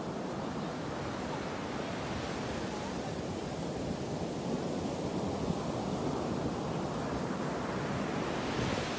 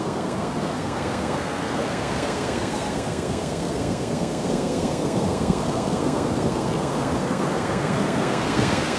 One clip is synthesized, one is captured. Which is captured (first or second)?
first